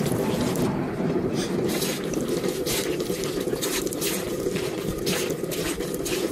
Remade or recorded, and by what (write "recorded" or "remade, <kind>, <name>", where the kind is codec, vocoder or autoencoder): recorded